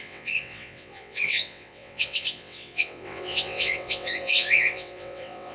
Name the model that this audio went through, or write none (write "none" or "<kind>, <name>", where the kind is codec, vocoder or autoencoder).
vocoder, WaveNeXt